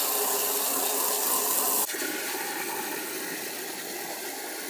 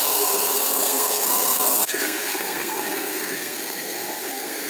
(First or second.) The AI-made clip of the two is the second